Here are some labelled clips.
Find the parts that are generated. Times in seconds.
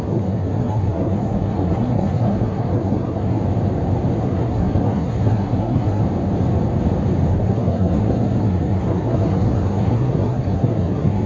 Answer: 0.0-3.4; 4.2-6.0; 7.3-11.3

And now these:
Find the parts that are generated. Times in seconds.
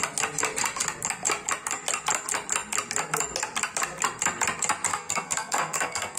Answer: 4.9-6.2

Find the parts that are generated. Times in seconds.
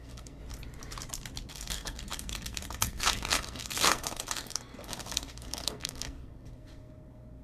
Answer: 0.0-0.4; 1.5-7.4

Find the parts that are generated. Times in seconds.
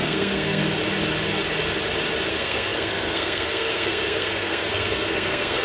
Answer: 0.0-0.6; 2.3-5.6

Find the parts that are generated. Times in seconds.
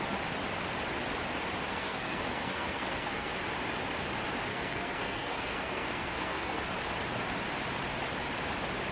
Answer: 1.7-3.3; 4.5-6.6